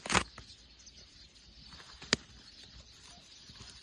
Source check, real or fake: real